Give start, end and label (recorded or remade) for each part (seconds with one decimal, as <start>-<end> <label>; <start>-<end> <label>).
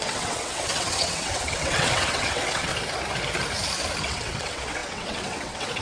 0.0-2.7 remade; 2.7-4.0 recorded; 4.0-5.8 remade